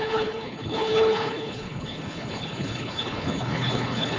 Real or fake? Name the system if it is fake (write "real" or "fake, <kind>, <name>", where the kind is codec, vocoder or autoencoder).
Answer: fake, codec, HILCodec